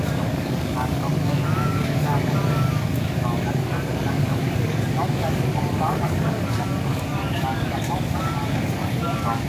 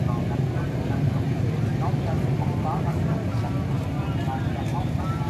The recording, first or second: second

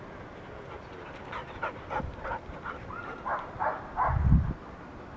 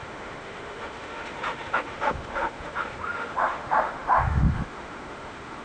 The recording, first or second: first